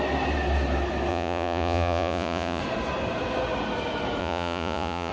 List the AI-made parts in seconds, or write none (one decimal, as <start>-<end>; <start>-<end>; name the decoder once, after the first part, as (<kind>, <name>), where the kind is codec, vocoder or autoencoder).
1.1-2.6 (vocoder, Vocos); 4.2-5.1